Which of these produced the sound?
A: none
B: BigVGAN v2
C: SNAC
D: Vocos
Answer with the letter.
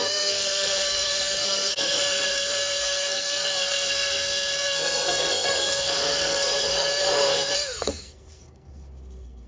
C